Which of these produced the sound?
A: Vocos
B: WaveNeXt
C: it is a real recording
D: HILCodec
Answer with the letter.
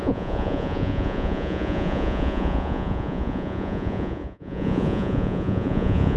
A